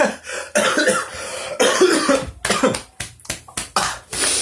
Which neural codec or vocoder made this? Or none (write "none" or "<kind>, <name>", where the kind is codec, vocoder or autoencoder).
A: none